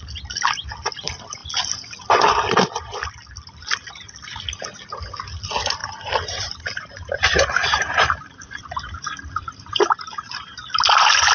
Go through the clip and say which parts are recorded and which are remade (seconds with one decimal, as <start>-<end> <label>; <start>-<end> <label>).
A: 0.0-5.8 recorded; 5.8-8.6 remade; 8.6-11.3 recorded